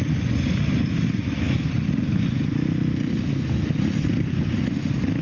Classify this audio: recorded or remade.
recorded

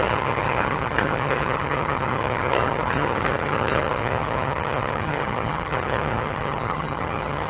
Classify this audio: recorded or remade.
remade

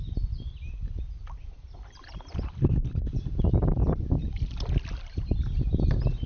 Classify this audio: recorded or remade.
recorded